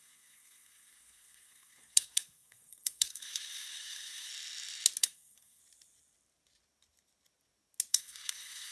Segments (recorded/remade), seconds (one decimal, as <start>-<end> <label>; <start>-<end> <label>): 0.0-4.3 remade; 4.3-5.0 recorded; 5.0-5.6 remade; 5.6-7.9 recorded; 7.9-8.7 remade

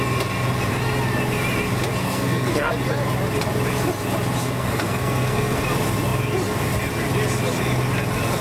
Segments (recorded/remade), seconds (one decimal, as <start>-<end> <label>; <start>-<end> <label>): 0.0-2.0 recorded; 2.0-2.7 remade; 2.7-4.4 recorded; 4.4-5.6 remade; 5.6-8.4 recorded